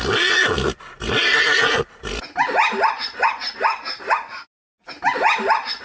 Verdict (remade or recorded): recorded